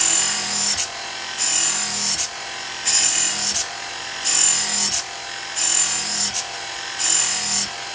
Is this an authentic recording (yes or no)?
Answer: yes